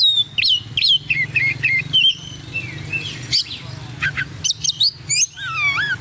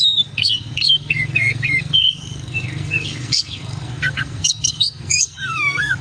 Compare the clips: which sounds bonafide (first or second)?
first